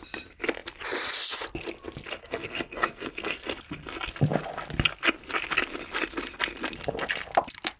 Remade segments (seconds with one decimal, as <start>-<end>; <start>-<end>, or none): 2.2-3.4